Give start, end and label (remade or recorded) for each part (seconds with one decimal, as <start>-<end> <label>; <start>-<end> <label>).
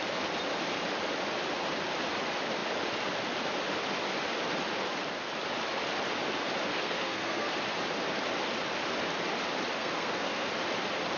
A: 0.0-6.7 recorded; 6.7-7.5 remade; 7.5-9.8 recorded; 9.8-10.5 remade; 10.5-11.2 recorded